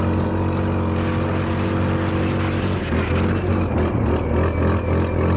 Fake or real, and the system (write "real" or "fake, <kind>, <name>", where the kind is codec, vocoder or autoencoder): real